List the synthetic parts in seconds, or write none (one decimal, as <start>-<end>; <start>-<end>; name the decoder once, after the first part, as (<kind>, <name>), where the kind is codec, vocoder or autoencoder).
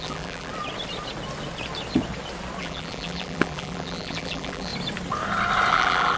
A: 0.0-0.5 (vocoder, BigVGAN v2); 2.6-4.7; 5.7-6.2